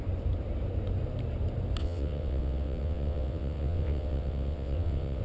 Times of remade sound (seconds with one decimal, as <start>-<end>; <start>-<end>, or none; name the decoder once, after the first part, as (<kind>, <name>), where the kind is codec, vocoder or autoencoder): 1.8-5.2 (vocoder, WaveNeXt)